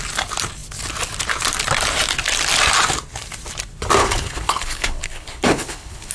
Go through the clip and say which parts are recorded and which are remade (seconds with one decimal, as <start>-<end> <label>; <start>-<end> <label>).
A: 0.0-4.0 recorded; 4.0-6.1 remade